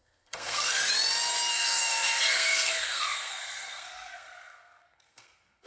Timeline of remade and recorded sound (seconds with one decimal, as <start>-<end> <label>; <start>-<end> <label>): 0.0-0.8 remade; 0.8-1.5 recorded; 1.5-5.7 remade